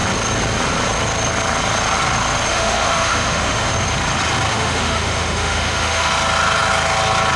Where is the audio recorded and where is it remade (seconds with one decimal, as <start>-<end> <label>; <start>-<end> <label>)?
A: 0.0-2.5 recorded; 2.5-3.7 remade; 3.7-4.5 recorded; 4.5-6.1 remade; 6.1-7.4 recorded

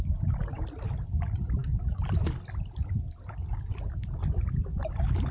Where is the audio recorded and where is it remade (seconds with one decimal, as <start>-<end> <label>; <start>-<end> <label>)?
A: 0.0-5.3 recorded

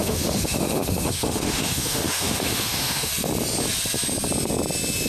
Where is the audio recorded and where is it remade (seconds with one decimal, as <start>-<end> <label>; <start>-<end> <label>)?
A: 0.0-3.1 remade; 3.1-5.1 recorded

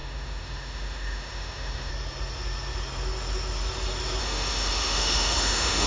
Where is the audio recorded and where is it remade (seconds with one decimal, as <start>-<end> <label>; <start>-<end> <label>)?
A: 0.0-1.9 remade; 1.9-4.2 recorded; 4.2-5.9 remade

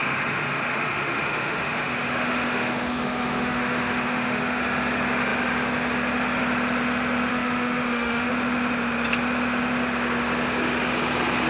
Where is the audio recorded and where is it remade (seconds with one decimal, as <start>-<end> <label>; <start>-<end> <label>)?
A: 0.0-4.6 remade; 4.6-7.3 recorded; 7.3-8.3 remade; 8.3-11.5 recorded

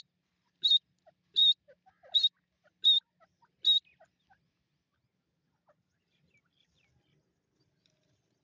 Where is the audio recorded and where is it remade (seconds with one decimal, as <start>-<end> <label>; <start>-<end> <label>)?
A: 0.0-8.4 recorded

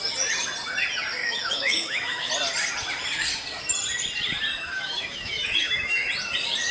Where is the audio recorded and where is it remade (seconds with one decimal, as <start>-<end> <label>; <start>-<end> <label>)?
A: 0.0-1.2 recorded; 1.2-2.3 remade; 2.3-4.5 recorded; 4.5-6.1 remade; 6.1-6.7 recorded